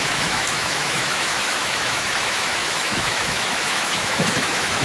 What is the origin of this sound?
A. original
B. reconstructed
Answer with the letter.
B